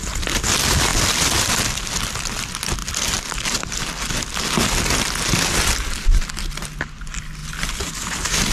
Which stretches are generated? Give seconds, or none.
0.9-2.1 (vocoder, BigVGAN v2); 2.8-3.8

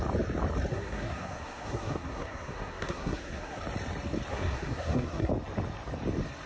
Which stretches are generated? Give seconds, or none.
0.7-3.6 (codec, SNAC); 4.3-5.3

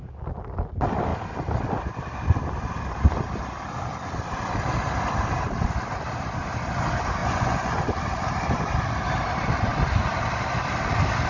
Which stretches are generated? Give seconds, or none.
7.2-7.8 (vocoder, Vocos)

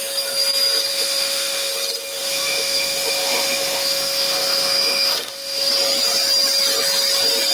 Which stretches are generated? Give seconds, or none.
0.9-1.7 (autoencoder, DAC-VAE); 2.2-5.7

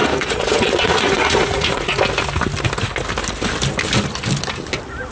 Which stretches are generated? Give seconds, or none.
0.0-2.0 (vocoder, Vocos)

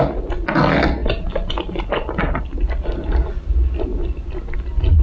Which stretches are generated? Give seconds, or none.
none